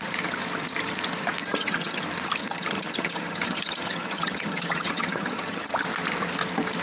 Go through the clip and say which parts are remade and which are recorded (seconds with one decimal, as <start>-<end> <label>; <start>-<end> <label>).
0.0-1.4 recorded; 1.4-2.0 remade; 2.0-2.4 recorded; 2.4-5.7 remade; 5.7-6.8 recorded